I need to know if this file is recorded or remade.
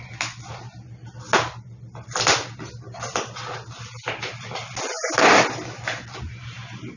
recorded